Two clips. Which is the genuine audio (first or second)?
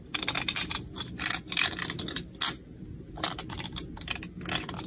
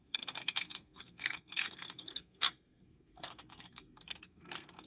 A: first